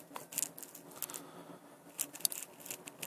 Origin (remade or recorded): recorded